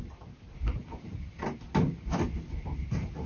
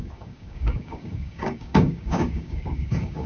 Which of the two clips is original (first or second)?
first